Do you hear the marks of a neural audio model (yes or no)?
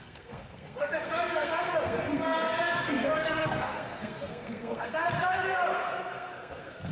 yes